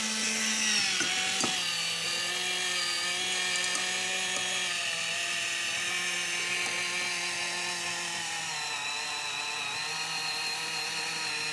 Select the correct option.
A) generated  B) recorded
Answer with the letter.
B